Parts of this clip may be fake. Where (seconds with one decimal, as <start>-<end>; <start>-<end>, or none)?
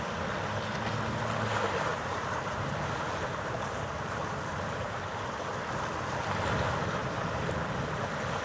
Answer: 1.9-5.2; 7.0-7.8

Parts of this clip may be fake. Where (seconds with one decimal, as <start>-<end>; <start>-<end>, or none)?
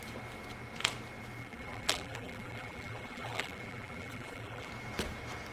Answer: 1.4-4.7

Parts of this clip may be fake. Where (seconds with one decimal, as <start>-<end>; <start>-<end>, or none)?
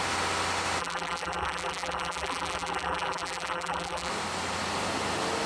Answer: 0.8-4.1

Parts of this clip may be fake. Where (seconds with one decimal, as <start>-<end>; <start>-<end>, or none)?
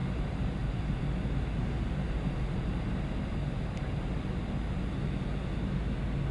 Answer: 0.0-1.0; 1.6-3.2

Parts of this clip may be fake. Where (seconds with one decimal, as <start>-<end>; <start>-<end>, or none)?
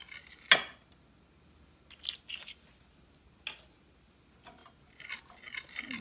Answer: none